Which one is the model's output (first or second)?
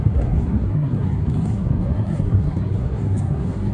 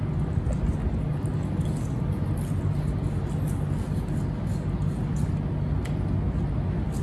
first